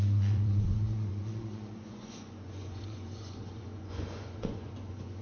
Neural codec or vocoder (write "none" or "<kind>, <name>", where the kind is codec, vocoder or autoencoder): vocoder, Vocos